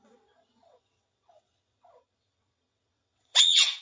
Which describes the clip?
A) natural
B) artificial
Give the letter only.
B